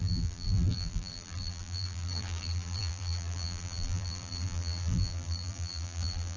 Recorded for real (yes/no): no